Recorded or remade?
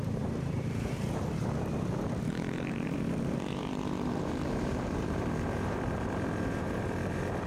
remade